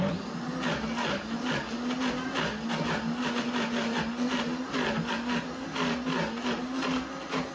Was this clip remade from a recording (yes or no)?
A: no